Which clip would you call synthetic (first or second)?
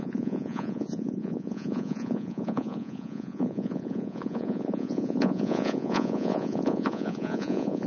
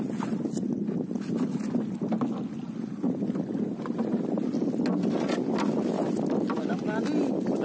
first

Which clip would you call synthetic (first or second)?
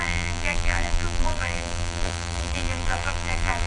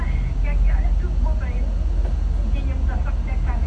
first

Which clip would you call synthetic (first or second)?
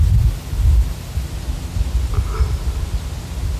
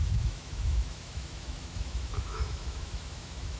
second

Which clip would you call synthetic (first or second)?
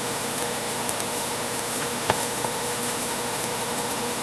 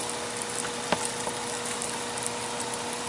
first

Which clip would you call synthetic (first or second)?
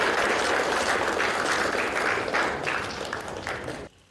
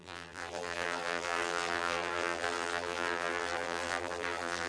second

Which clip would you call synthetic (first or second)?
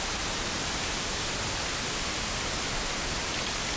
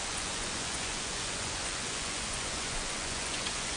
second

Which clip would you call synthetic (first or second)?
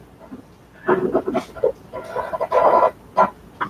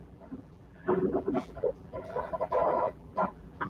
second